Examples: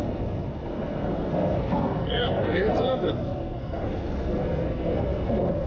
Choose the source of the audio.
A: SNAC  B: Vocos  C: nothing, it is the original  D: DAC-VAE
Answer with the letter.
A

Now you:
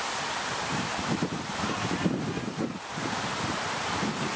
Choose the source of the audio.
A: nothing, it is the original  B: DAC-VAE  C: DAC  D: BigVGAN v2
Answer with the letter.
D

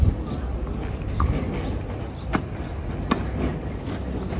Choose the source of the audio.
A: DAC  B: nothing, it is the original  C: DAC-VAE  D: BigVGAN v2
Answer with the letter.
B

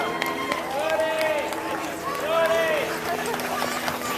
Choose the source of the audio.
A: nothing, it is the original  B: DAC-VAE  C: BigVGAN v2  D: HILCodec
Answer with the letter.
A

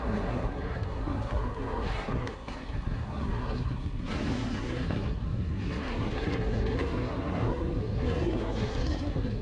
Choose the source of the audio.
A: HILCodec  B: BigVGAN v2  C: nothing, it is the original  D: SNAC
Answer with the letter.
D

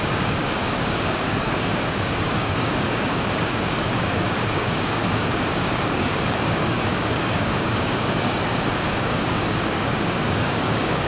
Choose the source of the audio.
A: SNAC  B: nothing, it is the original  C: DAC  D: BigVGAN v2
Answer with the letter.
C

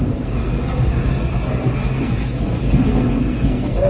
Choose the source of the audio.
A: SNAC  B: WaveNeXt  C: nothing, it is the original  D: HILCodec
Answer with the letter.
A